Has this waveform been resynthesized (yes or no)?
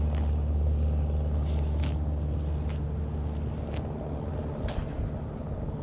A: no